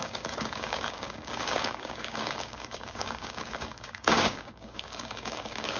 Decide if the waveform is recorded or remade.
remade